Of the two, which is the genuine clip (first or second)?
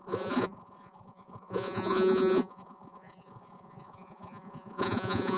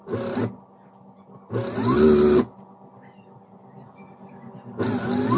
second